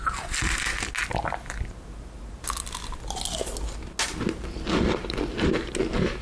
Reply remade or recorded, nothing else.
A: recorded